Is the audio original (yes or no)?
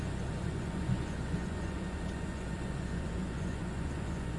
no